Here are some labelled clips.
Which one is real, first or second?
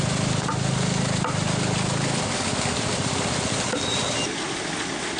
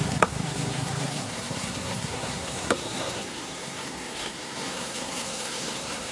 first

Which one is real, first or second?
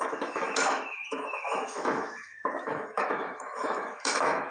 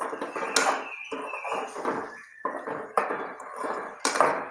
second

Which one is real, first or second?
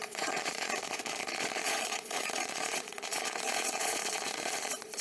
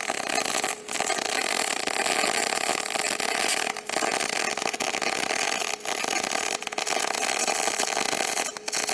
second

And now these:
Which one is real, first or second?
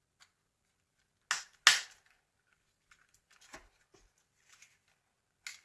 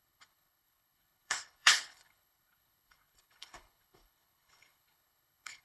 first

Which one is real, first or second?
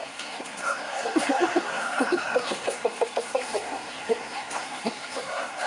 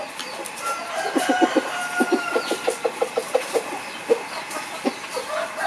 second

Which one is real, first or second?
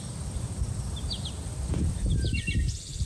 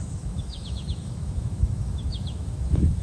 first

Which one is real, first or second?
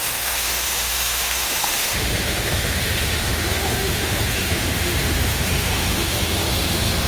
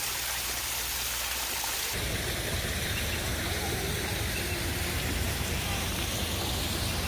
second